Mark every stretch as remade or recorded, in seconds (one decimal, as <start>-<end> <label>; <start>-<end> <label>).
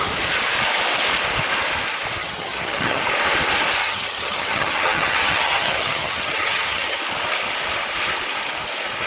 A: 0.0-2.2 recorded; 2.2-3.0 remade; 3.0-3.8 recorded; 3.8-7.0 remade; 7.0-9.1 recorded